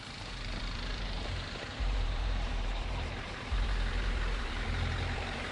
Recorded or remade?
remade